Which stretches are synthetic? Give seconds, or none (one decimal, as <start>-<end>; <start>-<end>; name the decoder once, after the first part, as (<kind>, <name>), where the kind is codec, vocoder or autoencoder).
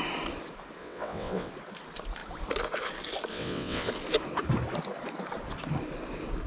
0.8-1.5 (vocoder, WaveNeXt); 3.3-3.9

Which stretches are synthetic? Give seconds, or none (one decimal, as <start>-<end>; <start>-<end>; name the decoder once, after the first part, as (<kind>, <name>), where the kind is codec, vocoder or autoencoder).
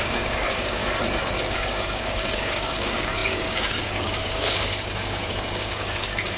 0.0-0.8 (codec, DAC); 1.4-6.4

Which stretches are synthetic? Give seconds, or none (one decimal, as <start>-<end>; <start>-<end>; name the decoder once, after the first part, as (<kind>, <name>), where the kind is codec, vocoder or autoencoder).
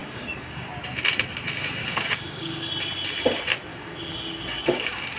0.0-0.7 (codec, DAC); 1.8-2.7; 3.7-5.2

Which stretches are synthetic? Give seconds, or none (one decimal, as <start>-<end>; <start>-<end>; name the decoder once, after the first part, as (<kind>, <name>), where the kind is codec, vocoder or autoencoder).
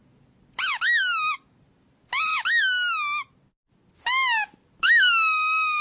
4.8-5.8 (autoencoder, DAC-VAE)